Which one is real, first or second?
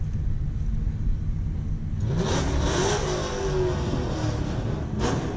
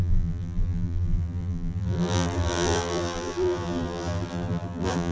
first